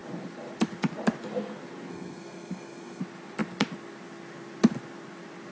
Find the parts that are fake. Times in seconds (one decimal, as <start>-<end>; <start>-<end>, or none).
1.9-3.0